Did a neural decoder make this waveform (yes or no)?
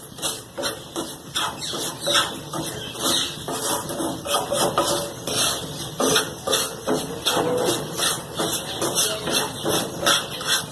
yes